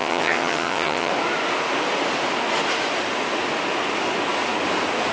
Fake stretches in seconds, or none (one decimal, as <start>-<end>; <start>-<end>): 0.0-1.1